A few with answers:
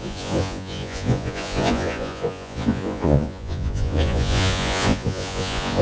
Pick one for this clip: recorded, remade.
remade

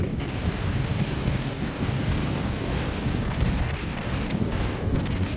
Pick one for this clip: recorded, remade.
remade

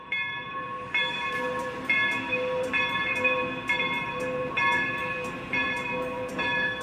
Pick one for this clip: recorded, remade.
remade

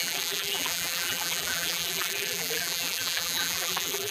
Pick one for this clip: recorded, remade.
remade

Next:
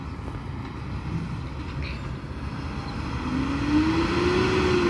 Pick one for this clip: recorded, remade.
recorded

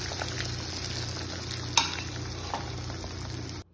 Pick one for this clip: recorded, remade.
recorded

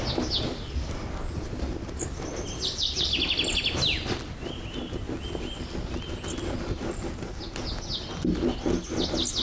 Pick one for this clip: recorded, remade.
recorded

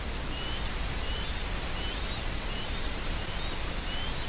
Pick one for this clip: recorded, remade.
recorded